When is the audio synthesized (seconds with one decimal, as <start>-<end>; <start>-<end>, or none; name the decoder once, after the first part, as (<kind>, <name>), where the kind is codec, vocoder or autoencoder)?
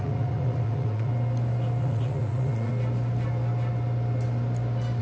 0.0-1.1 (vocoder, Vocos); 1.8-2.7